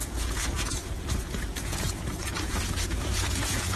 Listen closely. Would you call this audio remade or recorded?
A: remade